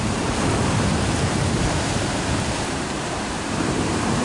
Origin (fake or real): fake